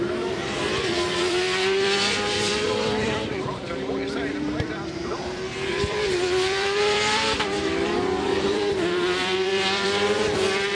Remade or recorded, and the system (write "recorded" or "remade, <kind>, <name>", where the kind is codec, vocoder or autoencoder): remade, vocoder, BigVGAN v2